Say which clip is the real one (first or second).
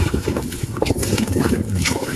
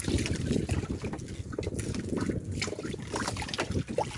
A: second